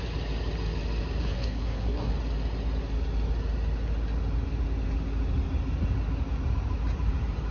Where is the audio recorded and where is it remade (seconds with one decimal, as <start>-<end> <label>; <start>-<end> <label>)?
0.0-1.2 recorded; 1.2-2.1 remade; 2.1-7.5 recorded